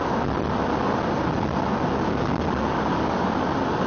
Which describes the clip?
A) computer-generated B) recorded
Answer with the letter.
B